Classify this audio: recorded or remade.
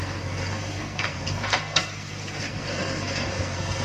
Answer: remade